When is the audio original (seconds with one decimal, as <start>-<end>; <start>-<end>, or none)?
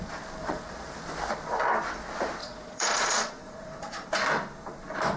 0.0-0.4; 1.0-2.4; 4.1-5.2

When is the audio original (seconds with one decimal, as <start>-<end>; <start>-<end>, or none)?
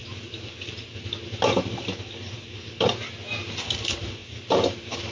0.0-5.1